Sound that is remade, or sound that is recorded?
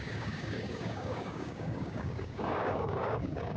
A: remade